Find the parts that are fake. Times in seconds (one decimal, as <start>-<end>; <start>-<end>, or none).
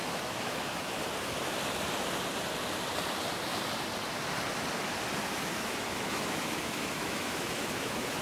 0.0-1.0; 5.3-8.2